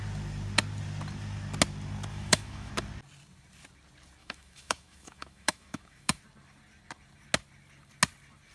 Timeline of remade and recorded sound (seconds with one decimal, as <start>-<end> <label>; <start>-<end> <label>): 0.0-2.1 recorded; 2.1-2.7 remade; 2.7-4.2 recorded; 4.2-6.2 remade; 6.2-8.5 recorded